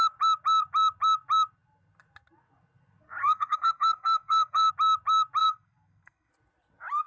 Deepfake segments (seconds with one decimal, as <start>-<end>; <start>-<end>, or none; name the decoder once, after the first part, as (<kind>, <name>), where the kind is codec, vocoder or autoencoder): 3.2-4.7 (codec, SNAC); 5.4-6.3